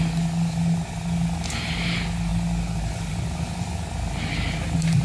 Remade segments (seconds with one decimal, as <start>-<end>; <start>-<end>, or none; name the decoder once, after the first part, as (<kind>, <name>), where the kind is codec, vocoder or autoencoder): none